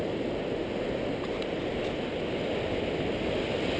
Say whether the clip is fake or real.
real